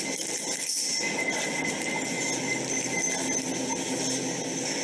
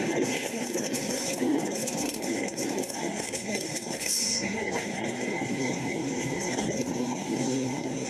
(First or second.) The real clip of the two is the first